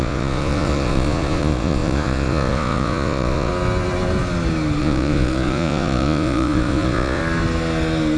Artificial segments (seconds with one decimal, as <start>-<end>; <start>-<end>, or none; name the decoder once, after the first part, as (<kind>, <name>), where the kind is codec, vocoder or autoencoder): 0.0-3.5 (vocoder, Vocos); 4.8-7.2